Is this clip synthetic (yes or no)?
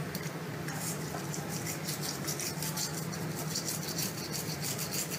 no